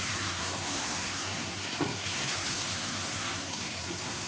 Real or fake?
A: fake